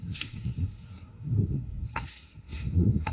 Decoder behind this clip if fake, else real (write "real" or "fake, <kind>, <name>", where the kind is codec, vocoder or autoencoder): fake, codec, SNAC